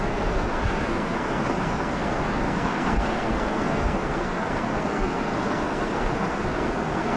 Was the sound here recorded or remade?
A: remade